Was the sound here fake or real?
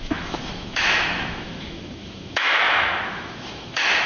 fake